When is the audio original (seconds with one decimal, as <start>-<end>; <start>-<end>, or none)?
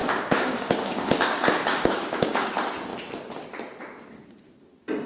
2.5-5.1